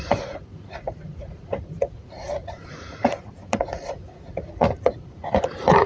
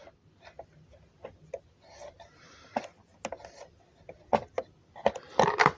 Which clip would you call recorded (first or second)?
second